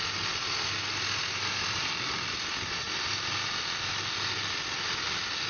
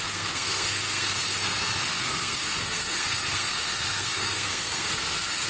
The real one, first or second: first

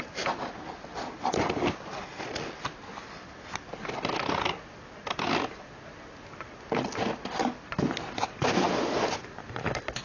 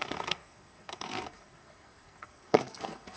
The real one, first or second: first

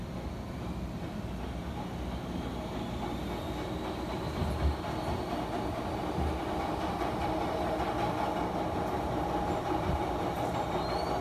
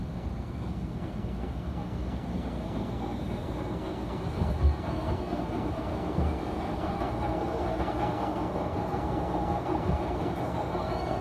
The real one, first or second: first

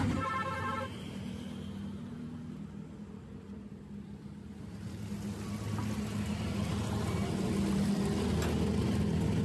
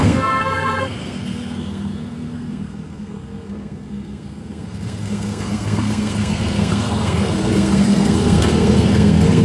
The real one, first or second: first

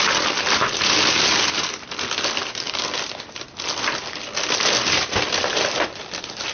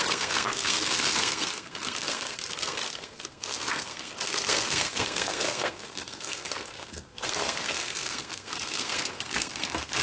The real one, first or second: first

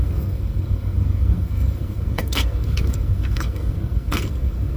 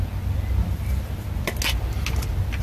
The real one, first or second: second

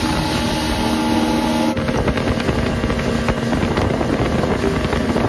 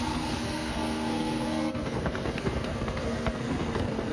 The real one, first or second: first